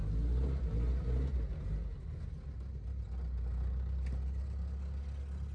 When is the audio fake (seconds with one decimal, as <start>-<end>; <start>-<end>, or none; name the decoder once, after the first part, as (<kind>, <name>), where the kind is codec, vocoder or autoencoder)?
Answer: none